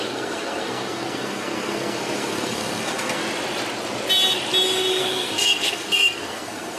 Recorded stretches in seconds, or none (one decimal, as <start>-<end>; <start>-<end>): 3.2-4.9

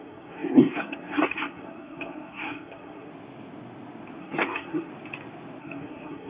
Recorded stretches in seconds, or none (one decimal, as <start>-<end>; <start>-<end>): 3.1-4.2; 4.9-5.6

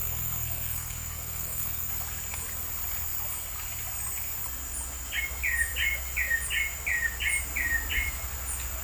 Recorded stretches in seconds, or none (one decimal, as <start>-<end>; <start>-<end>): 1.9-8.8

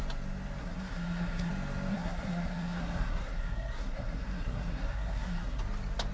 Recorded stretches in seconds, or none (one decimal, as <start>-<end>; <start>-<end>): 0.0-0.6; 1.5-1.9; 5.6-6.1

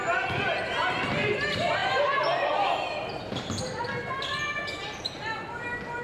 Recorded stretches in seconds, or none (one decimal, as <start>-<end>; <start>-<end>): 0.0-6.0

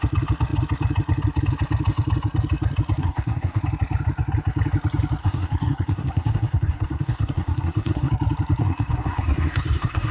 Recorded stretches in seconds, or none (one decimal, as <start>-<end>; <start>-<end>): 0.0-3.0; 3.6-5.2; 8.1-8.6

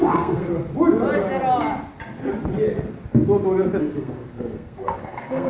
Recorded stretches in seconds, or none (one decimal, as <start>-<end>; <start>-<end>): 0.5-3.8